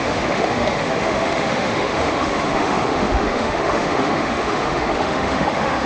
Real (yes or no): no